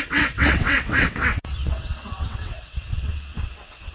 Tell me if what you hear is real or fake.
fake